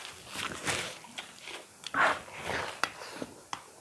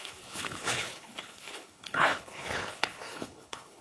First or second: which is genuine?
first